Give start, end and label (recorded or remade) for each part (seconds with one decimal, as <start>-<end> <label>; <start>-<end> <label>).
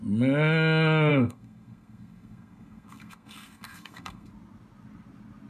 0.0-1.1 recorded; 1.1-4.3 remade; 4.3-5.5 recorded